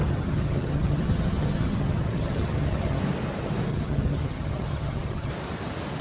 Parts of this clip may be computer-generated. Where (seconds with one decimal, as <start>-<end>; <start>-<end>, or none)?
0.0-3.0; 3.7-5.3